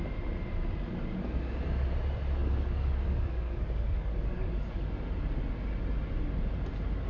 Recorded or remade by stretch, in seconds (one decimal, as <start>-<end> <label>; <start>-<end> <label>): 0.0-2.4 recorded; 2.4-4.9 remade; 4.9-7.1 recorded